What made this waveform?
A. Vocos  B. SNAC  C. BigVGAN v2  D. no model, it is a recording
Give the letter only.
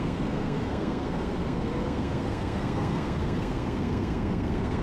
B